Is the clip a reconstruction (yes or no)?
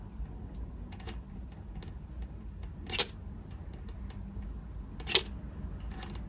no